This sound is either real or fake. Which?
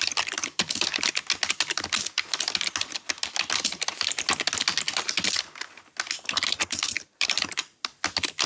real